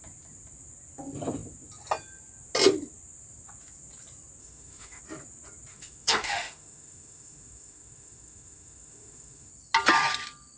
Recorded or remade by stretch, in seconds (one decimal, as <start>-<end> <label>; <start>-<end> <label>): 0.0-4.4 recorded; 4.4-5.0 remade; 5.0-5.7 recorded; 5.7-9.5 remade; 9.5-10.6 recorded